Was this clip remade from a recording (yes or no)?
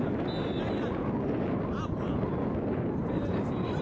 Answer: no